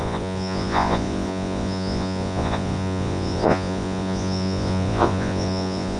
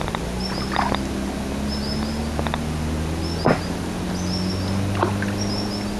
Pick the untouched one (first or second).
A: second